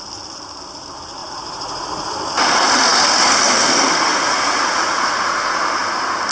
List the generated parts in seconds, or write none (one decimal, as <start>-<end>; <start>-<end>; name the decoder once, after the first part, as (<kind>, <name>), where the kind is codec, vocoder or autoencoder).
1.2-2.1 (vocoder, Vocos); 4.1-5.6